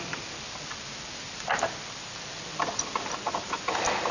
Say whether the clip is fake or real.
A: real